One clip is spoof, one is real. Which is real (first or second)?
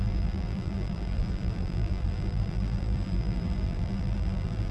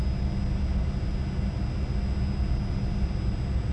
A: second